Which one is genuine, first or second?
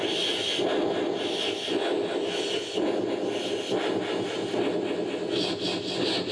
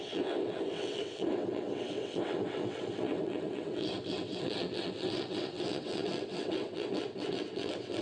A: first